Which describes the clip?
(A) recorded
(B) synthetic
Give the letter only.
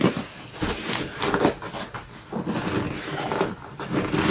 A